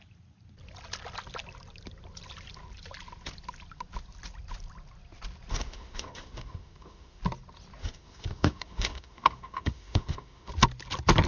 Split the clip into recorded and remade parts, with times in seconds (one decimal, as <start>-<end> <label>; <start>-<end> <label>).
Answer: 0.0-5.5 recorded; 5.5-7.2 remade; 7.2-7.8 recorded; 7.8-10.5 remade; 10.5-11.3 recorded